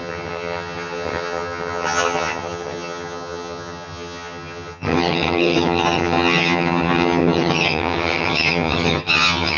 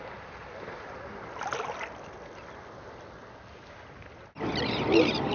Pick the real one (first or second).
second